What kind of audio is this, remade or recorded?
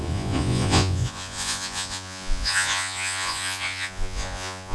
remade